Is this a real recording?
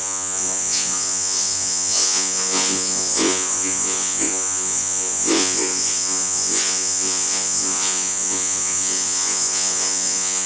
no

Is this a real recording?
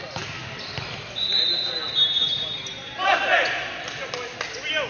yes